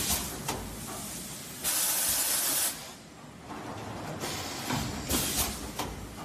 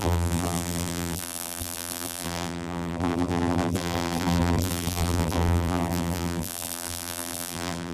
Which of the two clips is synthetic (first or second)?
second